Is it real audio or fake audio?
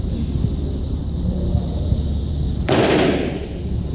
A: fake